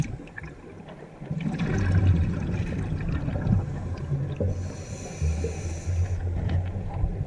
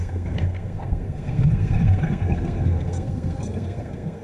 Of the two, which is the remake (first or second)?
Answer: second